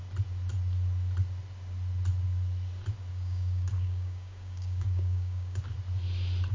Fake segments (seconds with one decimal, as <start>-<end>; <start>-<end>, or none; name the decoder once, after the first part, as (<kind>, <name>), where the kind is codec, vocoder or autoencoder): 3.1-5.6 (codec, DAC)